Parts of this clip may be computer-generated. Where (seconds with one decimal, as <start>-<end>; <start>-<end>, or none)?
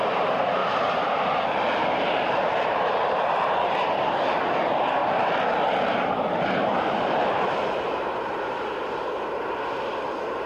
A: 0.0-0.6; 2.0-5.0; 5.8-10.5